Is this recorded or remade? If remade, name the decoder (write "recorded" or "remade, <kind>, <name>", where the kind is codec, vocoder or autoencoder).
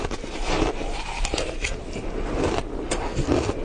recorded